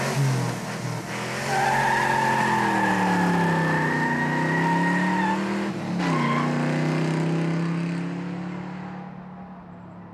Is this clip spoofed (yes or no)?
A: no